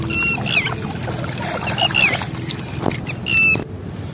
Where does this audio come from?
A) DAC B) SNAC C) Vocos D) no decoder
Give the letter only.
D